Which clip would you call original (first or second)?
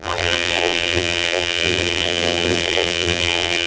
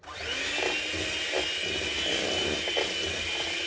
second